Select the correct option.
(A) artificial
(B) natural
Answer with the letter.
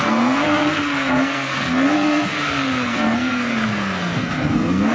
A